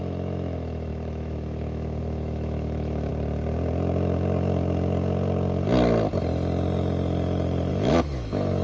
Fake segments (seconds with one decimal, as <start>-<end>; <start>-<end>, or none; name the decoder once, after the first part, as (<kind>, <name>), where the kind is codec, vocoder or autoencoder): 0.0-3.1 (autoencoder, DAC-VAE); 7.7-8.6